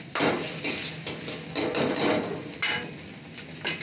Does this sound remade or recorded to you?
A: recorded